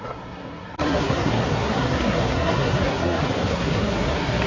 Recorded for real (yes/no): no